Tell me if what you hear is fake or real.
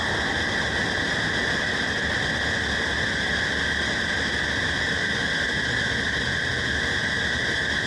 real